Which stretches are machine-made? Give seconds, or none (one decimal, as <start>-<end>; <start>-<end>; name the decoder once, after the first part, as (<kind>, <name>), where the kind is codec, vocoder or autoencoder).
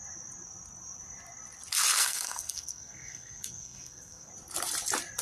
1.9-4.3 (codec, SNAC)